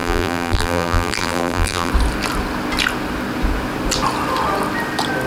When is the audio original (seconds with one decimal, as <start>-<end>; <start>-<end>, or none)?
1.9-5.3

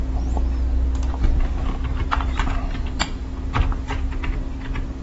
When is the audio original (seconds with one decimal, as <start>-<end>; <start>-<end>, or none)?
0.0-1.9; 3.4-5.0

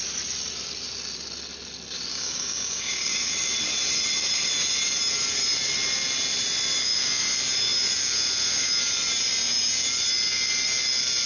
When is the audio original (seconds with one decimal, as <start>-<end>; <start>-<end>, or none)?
0.0-2.1; 3.3-11.3

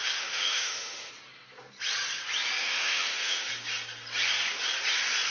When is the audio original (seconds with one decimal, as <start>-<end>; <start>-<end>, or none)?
1.1-2.6; 3.5-5.3